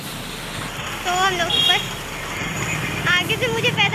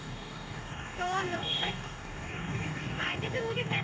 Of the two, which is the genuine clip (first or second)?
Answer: first